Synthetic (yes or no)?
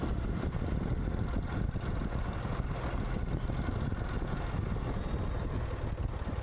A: no